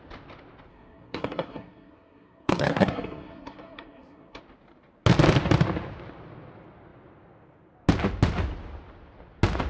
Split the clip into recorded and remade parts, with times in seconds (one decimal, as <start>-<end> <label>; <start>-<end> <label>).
0.0-0.7 recorded; 0.7-4.4 remade; 4.4-9.7 recorded